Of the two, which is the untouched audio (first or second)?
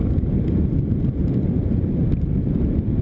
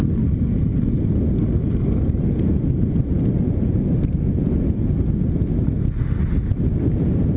second